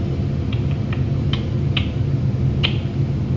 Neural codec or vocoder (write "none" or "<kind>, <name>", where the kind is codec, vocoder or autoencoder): none